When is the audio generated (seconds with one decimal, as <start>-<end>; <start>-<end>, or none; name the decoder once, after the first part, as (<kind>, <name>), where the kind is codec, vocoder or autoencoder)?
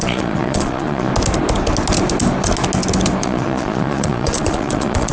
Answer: 0.0-1.1 (vocoder, Vocos); 3.2-5.1